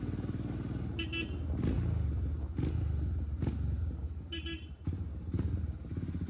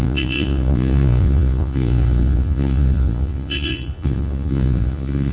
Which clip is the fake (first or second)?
second